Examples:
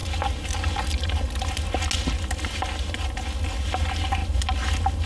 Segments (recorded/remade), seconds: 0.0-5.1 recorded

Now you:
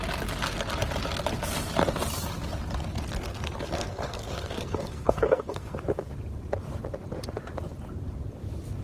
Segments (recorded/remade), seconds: 0.0-3.3 recorded; 3.3-5.8 remade; 5.8-8.8 recorded